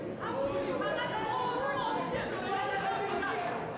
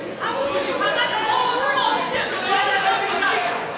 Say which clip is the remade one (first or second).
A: second